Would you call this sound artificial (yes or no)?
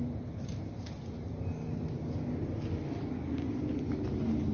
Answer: no